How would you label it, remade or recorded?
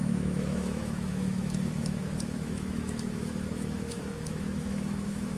remade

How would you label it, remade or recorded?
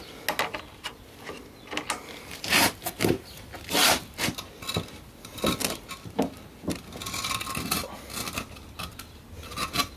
recorded